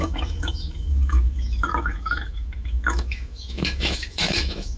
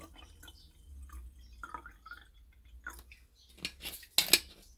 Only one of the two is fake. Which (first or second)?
first